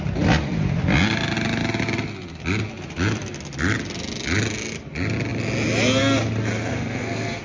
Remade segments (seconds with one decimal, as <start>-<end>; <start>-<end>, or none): 6.7-7.4